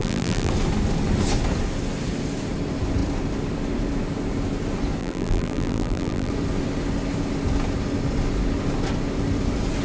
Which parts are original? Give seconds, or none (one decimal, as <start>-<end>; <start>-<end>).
0.5-5.0; 6.3-9.8